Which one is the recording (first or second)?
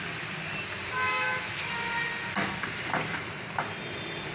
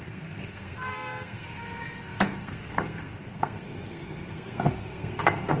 first